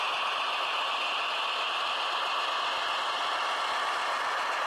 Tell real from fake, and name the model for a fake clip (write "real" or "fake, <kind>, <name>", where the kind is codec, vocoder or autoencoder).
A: real